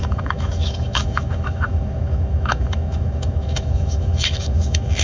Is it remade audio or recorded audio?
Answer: remade